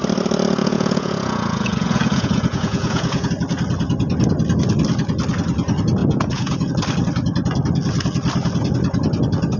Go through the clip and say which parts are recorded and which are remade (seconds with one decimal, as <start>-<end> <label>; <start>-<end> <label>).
0.0-0.6 recorded; 0.6-3.3 remade; 3.3-6.0 recorded; 6.0-6.7 remade; 6.7-9.6 recorded